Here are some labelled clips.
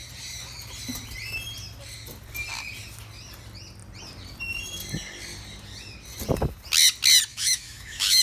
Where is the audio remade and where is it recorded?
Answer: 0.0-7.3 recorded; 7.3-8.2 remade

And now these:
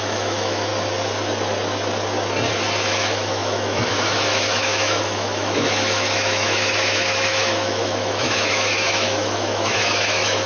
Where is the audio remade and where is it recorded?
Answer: 0.0-0.7 remade; 0.7-2.9 recorded; 2.9-10.5 remade

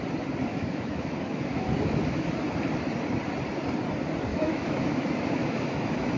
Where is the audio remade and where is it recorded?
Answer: 0.0-0.5 recorded; 0.5-2.3 remade; 2.3-4.3 recorded; 4.3-6.2 remade

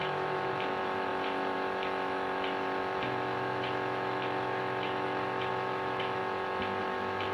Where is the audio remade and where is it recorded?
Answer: 0.0-6.2 remade; 6.2-6.8 recorded; 6.8-7.3 remade

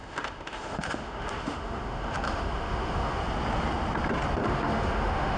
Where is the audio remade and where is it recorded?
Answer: 0.0-3.2 remade; 3.2-4.4 recorded; 4.4-5.4 remade